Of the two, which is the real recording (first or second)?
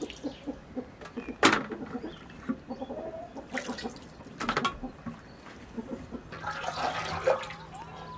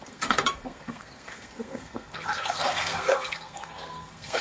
first